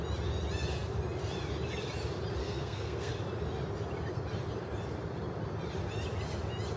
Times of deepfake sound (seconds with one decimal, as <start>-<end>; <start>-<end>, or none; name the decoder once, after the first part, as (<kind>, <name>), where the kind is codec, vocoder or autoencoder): 2.4-3.1 (codec, SNAC)